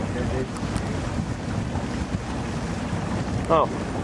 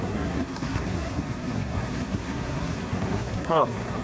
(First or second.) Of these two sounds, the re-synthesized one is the second